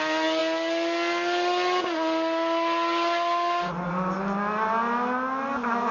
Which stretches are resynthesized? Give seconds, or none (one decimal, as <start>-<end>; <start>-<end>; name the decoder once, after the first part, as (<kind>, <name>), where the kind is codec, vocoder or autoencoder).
none